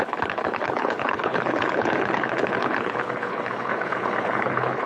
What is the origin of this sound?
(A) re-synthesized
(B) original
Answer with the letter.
A